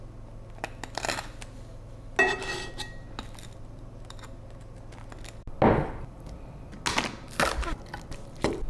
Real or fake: real